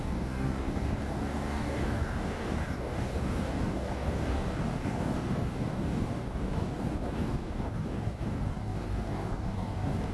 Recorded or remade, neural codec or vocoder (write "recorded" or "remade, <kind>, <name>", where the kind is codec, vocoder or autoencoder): remade, codec, DAC